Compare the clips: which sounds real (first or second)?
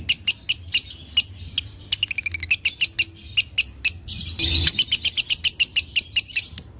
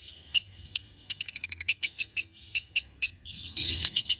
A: first